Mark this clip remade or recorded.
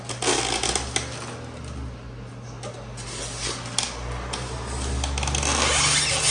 recorded